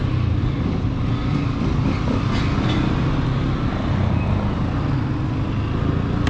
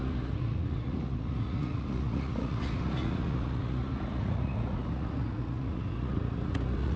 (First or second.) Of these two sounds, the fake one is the second